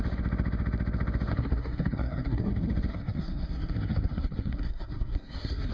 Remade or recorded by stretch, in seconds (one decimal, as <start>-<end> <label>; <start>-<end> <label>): 0.0-1.3 recorded; 1.3-2.5 remade; 2.5-2.9 recorded; 2.9-5.7 remade